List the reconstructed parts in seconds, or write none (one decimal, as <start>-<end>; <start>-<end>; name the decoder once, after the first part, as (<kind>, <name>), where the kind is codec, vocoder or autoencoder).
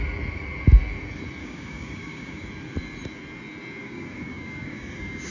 1.4-2.5 (codec, DAC); 3.8-5.3